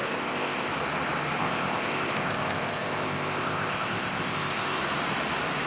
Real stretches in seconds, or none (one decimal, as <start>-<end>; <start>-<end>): 0.7-1.4; 4.8-5.7